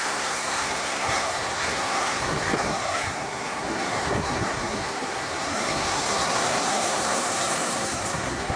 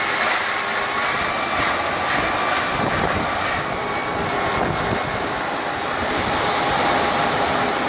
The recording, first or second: second